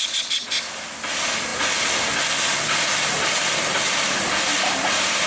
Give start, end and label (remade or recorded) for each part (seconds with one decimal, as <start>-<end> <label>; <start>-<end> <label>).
0.0-5.3 recorded